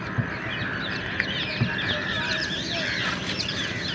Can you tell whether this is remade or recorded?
recorded